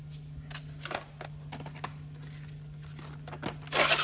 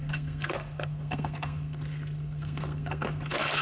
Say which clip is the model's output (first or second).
second